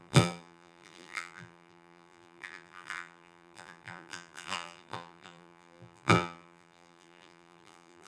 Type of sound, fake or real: fake